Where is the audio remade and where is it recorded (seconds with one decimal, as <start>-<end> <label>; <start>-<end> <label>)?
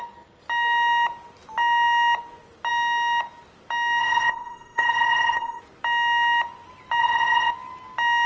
0.0-4.0 recorded; 4.0-5.6 remade; 5.6-7.0 recorded; 7.0-7.5 remade; 7.5-8.3 recorded